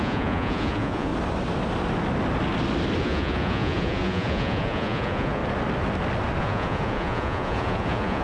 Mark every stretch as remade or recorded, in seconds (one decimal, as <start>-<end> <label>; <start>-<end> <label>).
0.0-1.1 remade; 1.1-3.0 recorded; 3.0-5.4 remade; 5.4-6.4 recorded; 6.4-8.2 remade